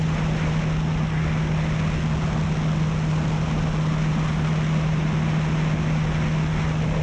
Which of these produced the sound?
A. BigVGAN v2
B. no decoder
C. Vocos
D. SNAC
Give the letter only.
B